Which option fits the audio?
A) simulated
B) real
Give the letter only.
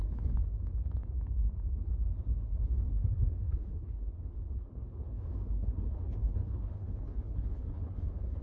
A